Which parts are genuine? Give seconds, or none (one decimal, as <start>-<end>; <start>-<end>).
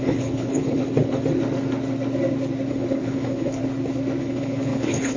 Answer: 0.8-2.7; 3.6-4.2